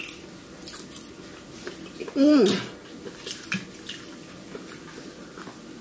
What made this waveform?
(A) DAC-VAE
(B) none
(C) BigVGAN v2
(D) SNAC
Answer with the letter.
B